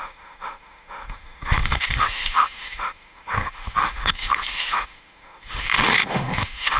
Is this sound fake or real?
fake